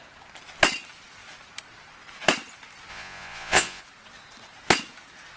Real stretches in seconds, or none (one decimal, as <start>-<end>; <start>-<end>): 0.0-2.9; 3.8-5.4